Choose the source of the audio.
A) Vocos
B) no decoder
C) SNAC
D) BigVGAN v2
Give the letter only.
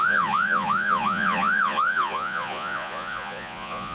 A